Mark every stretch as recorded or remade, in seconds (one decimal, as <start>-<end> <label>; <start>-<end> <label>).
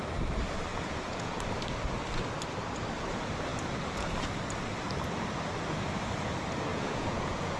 0.0-0.7 recorded; 0.7-1.4 remade; 1.4-6.7 recorded; 6.7-7.6 remade